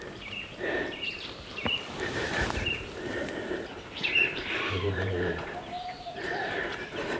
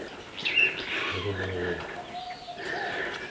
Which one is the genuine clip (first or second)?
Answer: second